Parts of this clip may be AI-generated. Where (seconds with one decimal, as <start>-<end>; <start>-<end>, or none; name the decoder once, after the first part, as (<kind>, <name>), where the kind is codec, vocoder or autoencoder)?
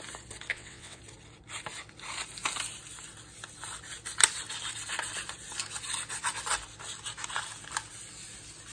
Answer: 0.5-1.0 (vocoder, WaveNeXt)